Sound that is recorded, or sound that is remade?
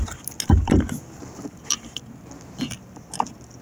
recorded